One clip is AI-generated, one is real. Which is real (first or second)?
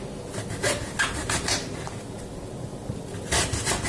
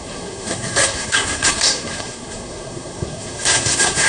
first